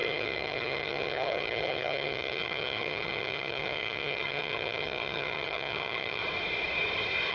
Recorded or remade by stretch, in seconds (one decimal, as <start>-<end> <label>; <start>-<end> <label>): 0.0-6.2 remade; 6.2-7.3 recorded